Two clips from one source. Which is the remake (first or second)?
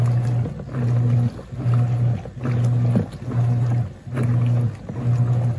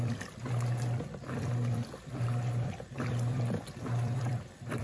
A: second